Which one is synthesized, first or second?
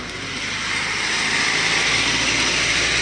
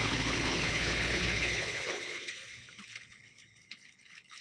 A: second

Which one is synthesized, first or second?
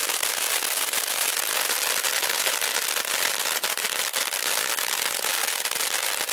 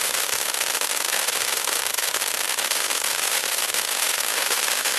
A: second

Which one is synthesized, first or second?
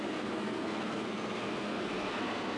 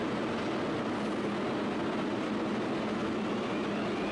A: first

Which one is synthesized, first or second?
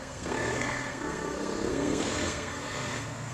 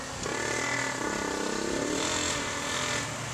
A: first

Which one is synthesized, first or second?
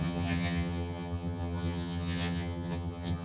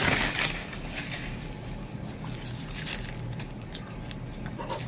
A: first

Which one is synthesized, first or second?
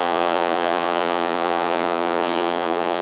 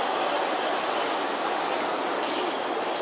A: first